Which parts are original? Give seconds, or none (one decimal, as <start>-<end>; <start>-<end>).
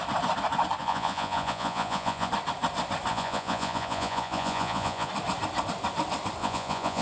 0.0-0.8; 2.3-3.1; 5.1-6.4